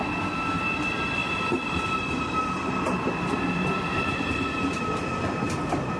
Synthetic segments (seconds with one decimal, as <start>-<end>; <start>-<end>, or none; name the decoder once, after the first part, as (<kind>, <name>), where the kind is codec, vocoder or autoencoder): 1.2-4.8 (vocoder, BigVGAN v2)